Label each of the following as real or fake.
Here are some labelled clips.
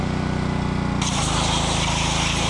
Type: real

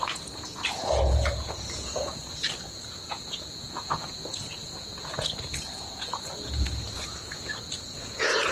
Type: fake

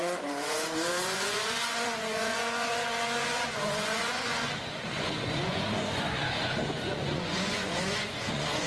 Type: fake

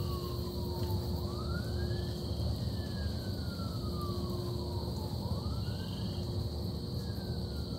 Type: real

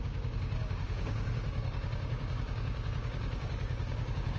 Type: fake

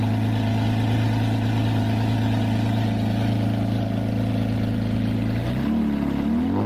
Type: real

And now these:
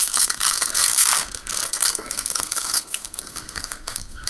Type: fake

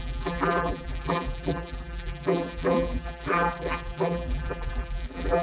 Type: fake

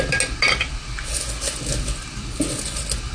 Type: real